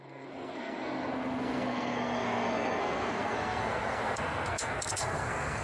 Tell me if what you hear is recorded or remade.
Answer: remade